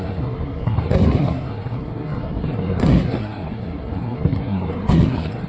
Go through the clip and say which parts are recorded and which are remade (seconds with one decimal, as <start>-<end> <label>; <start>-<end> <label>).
0.0-5.5 remade